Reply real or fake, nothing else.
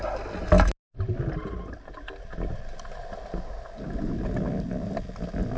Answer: real